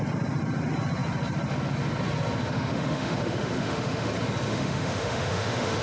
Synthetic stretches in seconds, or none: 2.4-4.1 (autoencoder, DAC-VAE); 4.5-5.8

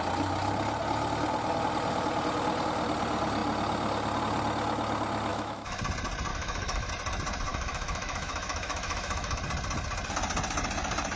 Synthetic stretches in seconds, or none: 5.3-5.8 (autoencoder, DAC-VAE); 6.3-6.9; 7.5-9.4

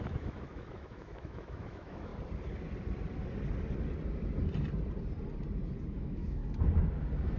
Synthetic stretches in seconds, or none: 0.0-2.1 (autoencoder, DAC-VAE); 5.9-6.4